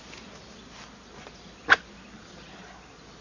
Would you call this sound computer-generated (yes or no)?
no